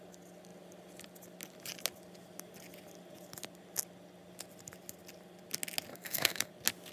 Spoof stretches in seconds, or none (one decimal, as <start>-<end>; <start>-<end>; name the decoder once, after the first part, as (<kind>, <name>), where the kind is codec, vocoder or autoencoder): 5.9-6.5 (codec, SNAC)